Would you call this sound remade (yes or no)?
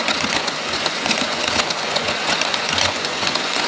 yes